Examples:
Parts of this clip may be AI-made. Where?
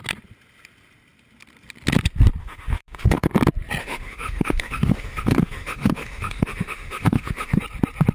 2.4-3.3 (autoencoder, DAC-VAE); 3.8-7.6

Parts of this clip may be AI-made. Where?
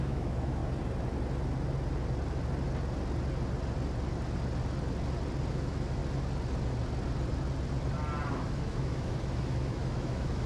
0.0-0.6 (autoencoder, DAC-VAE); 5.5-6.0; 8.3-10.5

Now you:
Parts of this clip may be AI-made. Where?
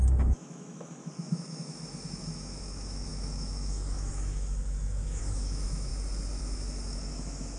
0.0-5.9 (autoencoder, DAC-VAE); 6.4-7.6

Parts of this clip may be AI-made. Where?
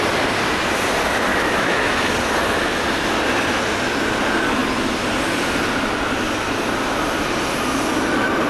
1.3-2.1 (autoencoder, DAC-VAE)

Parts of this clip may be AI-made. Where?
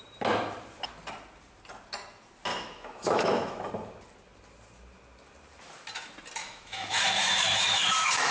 2.5-3.7 (autoencoder, DAC-VAE); 6.4-8.3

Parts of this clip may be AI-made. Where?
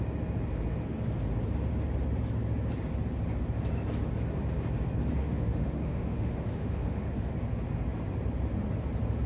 5.2-7.3 (autoencoder, DAC-VAE)